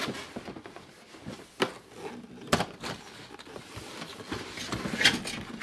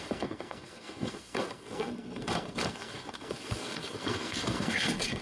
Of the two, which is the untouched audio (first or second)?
first